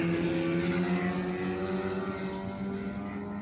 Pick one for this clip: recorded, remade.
recorded